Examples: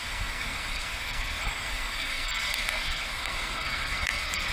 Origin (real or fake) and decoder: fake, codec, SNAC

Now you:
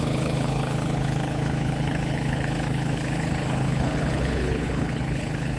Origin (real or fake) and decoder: fake, codec, HILCodec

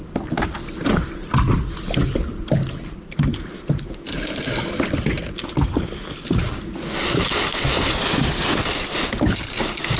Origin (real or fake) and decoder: real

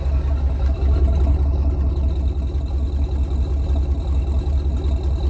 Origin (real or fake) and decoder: real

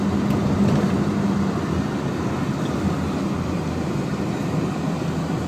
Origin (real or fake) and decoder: real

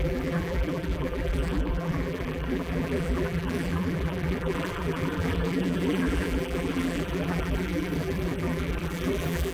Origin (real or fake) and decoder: fake, vocoder, BigVGAN v2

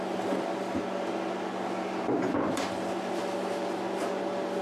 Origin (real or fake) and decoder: real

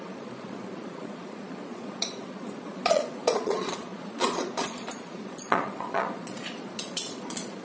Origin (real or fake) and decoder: fake, vocoder, Vocos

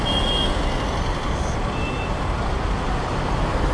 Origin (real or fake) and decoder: real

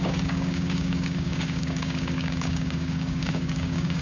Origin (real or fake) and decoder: fake, codec, DAC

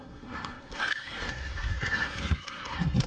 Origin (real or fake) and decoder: fake, codec, SNAC